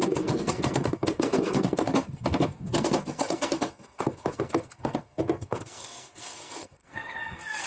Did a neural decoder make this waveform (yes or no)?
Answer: yes